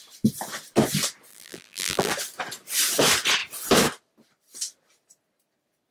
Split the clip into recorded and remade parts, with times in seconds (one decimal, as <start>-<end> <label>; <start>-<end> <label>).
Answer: 0.0-1.3 recorded; 1.3-2.1 remade; 2.1-5.9 recorded

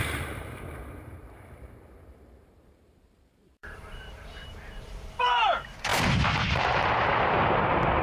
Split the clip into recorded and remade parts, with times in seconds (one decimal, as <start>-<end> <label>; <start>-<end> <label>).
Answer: 0.0-8.0 remade

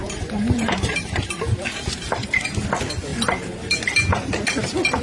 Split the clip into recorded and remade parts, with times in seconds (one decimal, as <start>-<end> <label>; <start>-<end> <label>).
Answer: 0.0-2.4 remade; 2.4-5.0 recorded

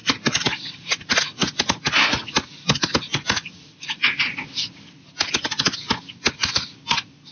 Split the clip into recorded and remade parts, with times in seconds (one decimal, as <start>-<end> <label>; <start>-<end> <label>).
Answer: 0.0-1.1 remade; 1.1-3.1 recorded; 3.1-4.7 remade; 4.7-7.3 recorded

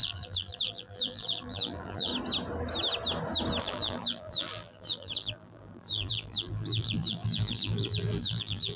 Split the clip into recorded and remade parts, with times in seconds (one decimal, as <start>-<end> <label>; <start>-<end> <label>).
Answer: 0.0-2.1 remade; 2.1-3.6 recorded; 3.6-8.8 remade

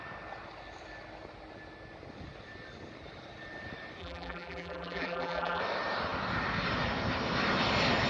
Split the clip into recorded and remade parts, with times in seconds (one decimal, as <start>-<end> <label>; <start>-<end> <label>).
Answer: 0.0-4.0 recorded; 4.0-5.6 remade; 5.6-8.1 recorded

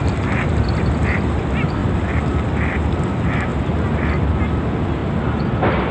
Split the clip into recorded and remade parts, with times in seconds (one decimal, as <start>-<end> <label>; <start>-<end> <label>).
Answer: 0.0-3.5 recorded; 3.5-4.1 remade; 4.1-5.9 recorded

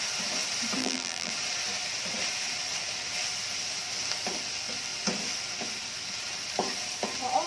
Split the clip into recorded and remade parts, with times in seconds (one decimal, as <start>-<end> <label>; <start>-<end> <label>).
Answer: 0.0-0.8 recorded; 0.8-1.3 remade; 1.3-7.5 recorded